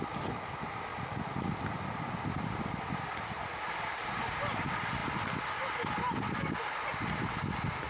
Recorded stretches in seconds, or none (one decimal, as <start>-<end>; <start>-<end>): 0.0-7.9